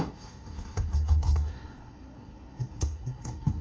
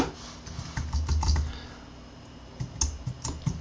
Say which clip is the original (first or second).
second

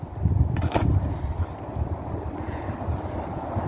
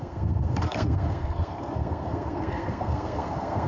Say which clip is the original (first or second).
first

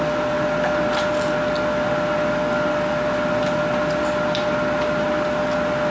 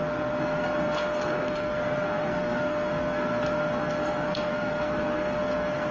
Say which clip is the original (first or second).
first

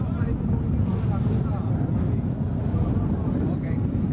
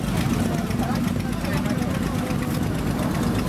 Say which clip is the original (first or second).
second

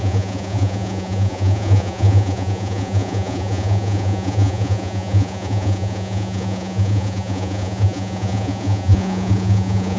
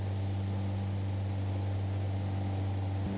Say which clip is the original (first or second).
second